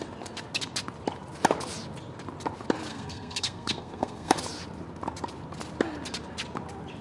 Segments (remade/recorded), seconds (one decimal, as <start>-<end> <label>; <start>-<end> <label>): 0.0-2.9 recorded; 2.9-4.4 remade; 4.4-7.0 recorded